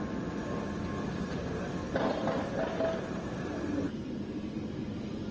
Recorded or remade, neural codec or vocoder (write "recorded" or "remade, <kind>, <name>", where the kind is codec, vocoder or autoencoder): recorded